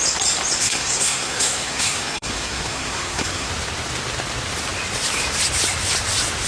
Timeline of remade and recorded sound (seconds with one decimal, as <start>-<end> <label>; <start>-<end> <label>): 0.0-0.6 recorded; 0.6-3.5 remade; 3.5-6.5 recorded